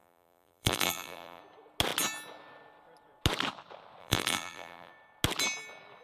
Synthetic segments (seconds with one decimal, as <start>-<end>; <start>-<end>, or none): 0.0-1.4; 4.0-4.9